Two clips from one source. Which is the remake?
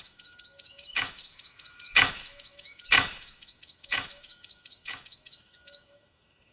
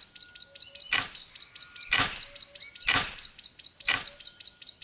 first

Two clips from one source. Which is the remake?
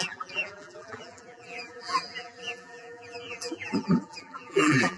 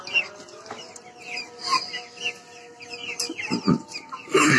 first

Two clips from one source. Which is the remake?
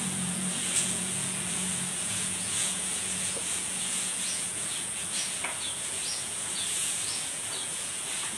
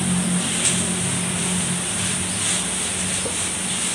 first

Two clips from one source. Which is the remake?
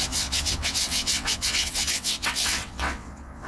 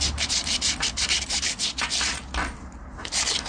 first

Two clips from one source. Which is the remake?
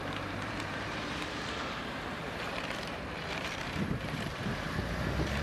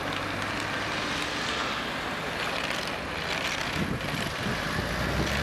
first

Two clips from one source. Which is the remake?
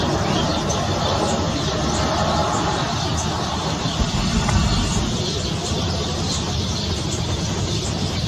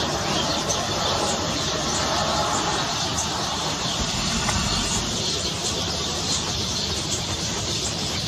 second